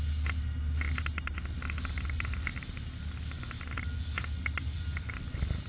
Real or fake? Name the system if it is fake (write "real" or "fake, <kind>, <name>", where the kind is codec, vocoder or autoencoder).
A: real